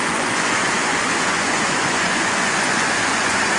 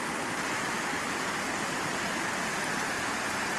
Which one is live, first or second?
second